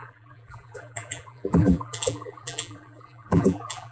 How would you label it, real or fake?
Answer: fake